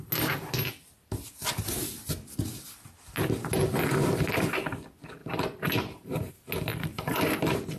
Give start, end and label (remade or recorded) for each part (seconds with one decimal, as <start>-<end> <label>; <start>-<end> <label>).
0.0-5.2 recorded; 5.2-6.3 remade; 6.3-6.9 recorded; 6.9-7.8 remade